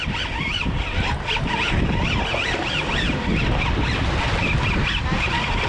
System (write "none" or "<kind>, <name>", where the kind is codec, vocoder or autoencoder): none